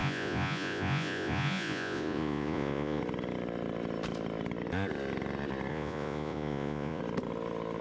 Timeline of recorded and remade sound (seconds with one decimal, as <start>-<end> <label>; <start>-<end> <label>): 0.0-3.0 remade; 3.0-5.7 recorded; 5.7-7.0 remade; 7.0-7.8 recorded